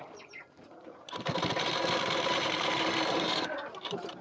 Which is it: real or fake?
fake